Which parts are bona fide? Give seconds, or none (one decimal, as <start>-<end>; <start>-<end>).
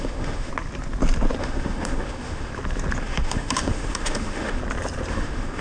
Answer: 0.5-1.4; 2.5-3.0; 4.6-5.1